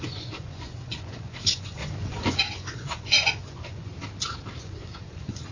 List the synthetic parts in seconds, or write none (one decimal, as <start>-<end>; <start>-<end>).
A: 0.0-3.9; 4.6-5.5